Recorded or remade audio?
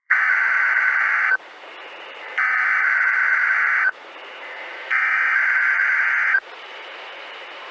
remade